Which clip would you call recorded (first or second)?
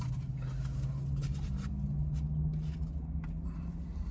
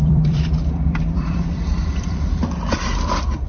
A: first